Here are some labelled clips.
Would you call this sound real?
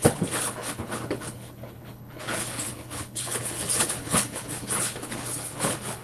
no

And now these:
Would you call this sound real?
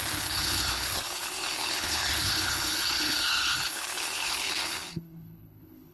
no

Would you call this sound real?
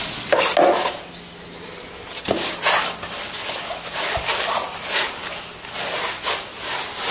yes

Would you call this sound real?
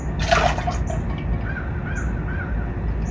yes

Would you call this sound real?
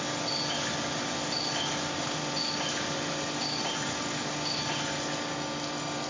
yes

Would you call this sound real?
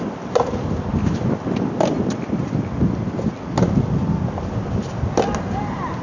yes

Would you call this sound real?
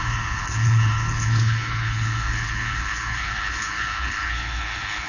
no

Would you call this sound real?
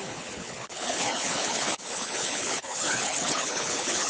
no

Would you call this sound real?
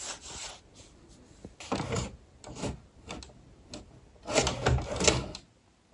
yes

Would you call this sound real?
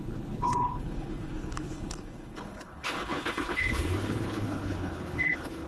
no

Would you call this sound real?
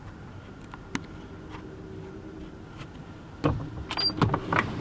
yes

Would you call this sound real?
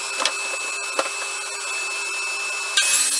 yes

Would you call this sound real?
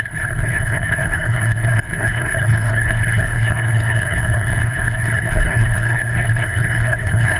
no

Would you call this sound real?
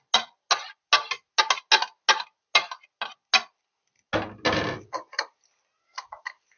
yes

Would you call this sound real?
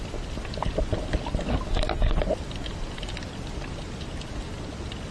yes